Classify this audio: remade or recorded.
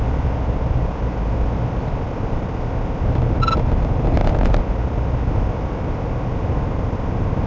recorded